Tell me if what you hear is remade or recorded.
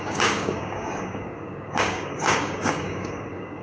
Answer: remade